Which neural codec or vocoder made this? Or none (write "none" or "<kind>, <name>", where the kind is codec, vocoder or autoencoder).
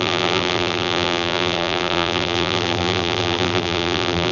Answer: vocoder, BigVGAN v2